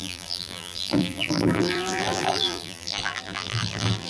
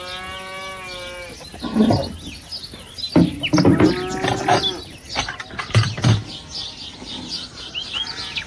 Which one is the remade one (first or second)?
first